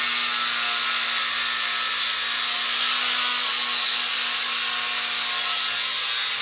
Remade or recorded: recorded